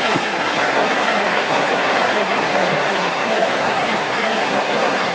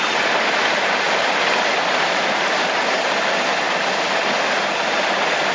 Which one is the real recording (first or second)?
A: second